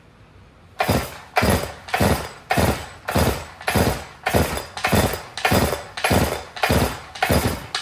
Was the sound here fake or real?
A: real